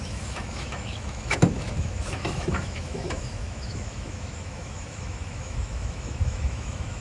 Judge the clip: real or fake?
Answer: fake